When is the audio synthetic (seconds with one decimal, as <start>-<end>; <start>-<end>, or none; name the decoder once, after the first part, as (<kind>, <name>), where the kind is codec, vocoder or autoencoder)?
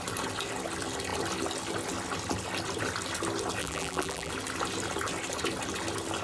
3.6-4.3 (vocoder, BigVGAN v2)